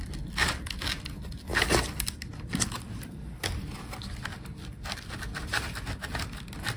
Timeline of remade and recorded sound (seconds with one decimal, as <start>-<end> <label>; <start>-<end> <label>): 0.0-6.8 recorded